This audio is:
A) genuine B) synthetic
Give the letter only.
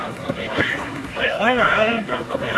B